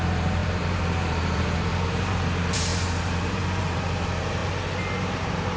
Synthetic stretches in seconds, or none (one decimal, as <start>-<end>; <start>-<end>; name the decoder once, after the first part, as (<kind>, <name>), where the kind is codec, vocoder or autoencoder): 0.0-4.4 (vocoder, BigVGAN v2); 5.0-5.6